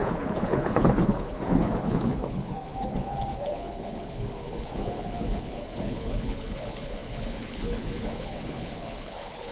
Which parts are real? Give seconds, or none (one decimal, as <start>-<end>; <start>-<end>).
none